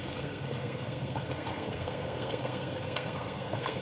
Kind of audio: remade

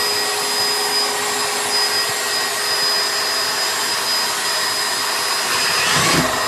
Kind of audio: recorded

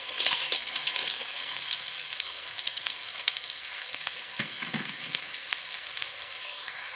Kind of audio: remade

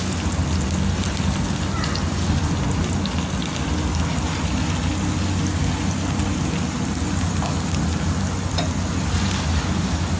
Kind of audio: recorded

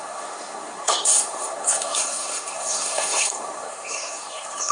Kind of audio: remade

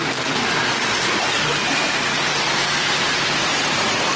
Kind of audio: recorded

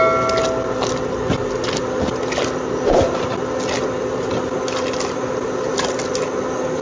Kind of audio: recorded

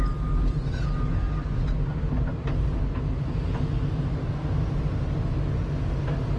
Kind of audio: recorded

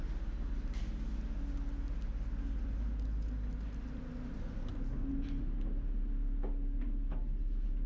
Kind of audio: recorded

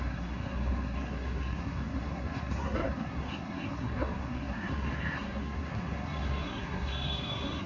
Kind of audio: remade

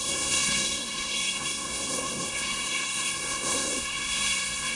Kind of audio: remade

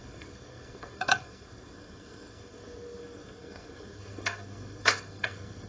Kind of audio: remade